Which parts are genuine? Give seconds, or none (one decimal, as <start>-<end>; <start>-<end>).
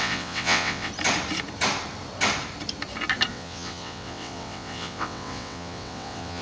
0.9-3.3